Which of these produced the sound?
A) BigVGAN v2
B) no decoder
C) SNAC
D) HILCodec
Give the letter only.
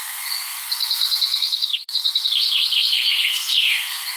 C